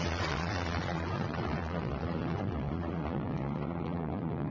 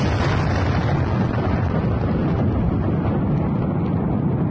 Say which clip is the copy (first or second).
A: first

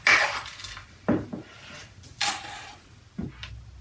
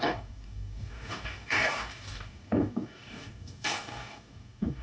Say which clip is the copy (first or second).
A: second